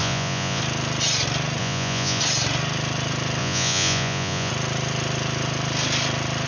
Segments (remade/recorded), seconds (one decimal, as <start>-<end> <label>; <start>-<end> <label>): 0.0-0.6 remade; 0.6-1.6 recorded; 1.6-2.2 remade; 2.2-3.4 recorded; 3.4-4.5 remade; 4.5-6.5 recorded